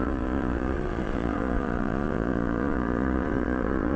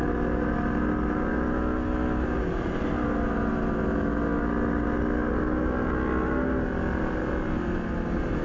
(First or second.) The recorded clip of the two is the second